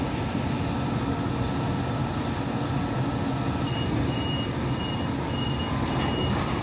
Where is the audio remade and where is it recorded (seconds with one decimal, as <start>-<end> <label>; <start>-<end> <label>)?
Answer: 0.0-6.6 recorded